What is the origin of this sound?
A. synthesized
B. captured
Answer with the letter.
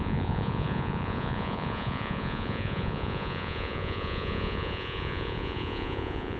A